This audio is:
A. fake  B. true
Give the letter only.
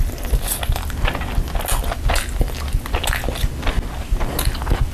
B